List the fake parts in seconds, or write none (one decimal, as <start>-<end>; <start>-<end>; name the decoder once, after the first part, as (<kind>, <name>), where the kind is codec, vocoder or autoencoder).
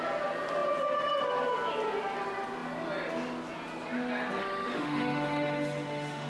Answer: 4.4-6.3 (autoencoder, DAC-VAE)